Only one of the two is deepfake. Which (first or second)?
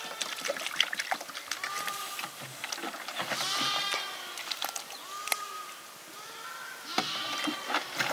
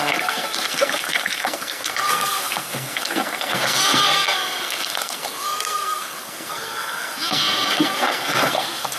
second